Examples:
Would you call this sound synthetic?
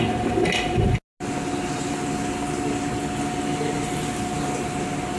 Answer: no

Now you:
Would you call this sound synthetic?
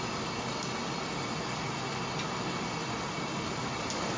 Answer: no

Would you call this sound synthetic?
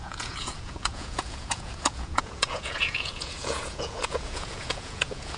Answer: yes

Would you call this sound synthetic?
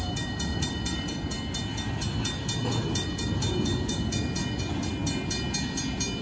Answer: no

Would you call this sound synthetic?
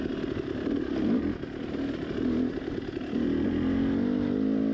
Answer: no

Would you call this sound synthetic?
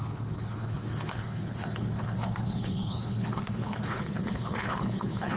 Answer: yes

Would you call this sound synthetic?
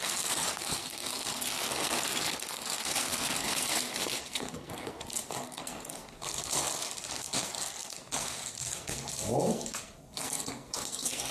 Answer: yes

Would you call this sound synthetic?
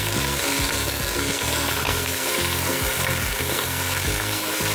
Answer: yes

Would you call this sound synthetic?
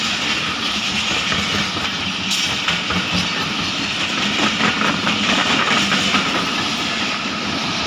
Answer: no